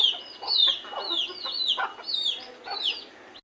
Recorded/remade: recorded